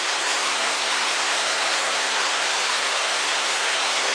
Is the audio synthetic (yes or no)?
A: yes